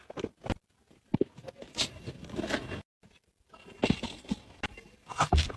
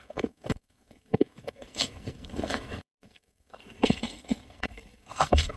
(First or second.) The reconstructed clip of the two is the second